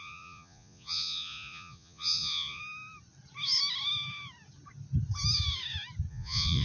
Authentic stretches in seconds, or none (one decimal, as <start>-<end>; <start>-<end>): 2.6-6.1